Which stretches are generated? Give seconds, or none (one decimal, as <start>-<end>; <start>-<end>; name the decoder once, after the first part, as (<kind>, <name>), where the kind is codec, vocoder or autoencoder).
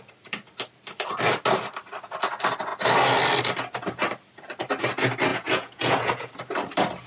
5.3-6.3 (vocoder, Vocos)